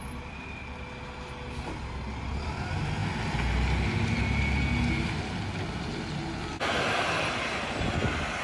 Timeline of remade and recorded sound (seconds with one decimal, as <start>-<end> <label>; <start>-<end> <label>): 0.0-8.4 recorded